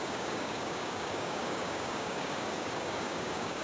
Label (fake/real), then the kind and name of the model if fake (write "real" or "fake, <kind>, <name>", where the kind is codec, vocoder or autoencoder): fake, codec, DAC